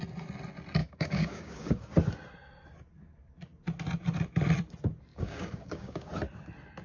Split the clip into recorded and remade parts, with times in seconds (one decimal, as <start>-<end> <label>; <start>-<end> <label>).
0.0-0.8 recorded; 0.8-1.9 remade; 1.9-5.1 recorded; 5.1-6.1 remade; 6.1-6.8 recorded